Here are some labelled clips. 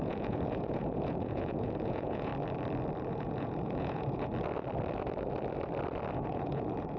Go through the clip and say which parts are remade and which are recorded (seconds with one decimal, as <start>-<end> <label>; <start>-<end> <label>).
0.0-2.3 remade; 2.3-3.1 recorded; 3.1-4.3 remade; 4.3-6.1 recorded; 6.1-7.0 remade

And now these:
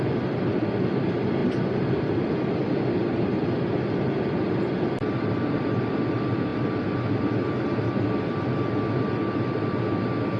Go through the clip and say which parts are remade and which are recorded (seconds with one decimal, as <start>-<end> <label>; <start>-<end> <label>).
0.0-10.4 recorded

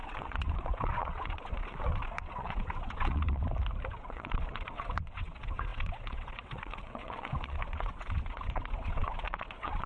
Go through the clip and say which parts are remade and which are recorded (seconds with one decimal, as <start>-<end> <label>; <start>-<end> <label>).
0.0-3.4 remade; 3.4-3.9 recorded; 3.9-9.9 remade